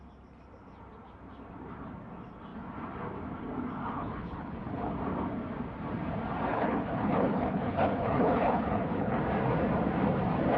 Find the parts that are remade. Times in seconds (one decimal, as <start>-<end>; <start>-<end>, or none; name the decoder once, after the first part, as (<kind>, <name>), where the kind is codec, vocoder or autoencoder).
3.8-4.9 (codec, HILCodec); 6.5-9.2